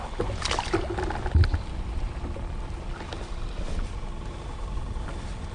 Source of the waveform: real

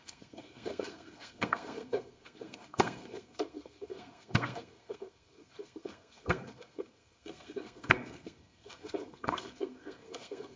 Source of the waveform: fake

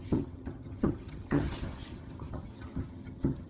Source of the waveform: fake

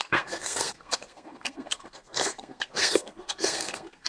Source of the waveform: fake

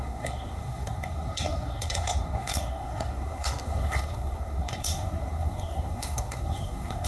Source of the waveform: fake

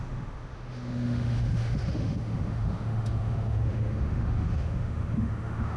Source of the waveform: fake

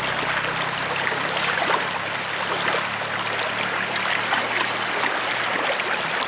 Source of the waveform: real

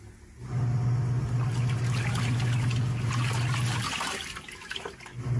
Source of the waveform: real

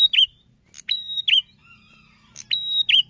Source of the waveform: real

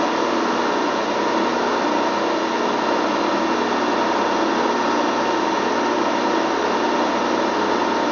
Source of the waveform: real